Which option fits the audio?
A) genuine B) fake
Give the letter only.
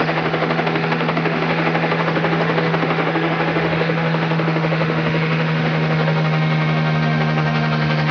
B